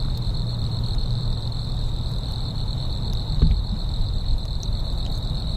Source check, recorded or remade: remade